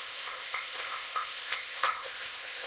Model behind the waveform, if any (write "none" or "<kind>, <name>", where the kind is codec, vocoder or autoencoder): codec, ZipCodec